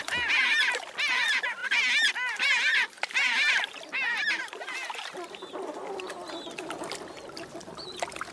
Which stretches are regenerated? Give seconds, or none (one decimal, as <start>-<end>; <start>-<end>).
none